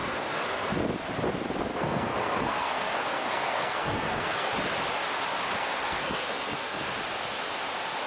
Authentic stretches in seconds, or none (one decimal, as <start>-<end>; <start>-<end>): 0.7-1.7; 4.5-5.6; 6.9-8.1